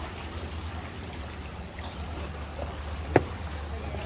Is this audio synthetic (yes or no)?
no